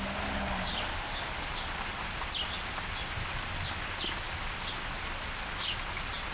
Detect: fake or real real